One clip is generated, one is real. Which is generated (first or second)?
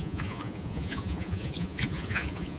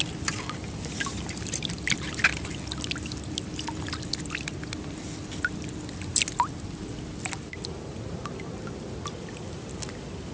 first